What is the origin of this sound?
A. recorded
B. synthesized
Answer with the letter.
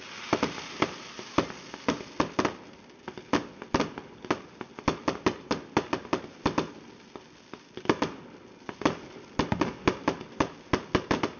A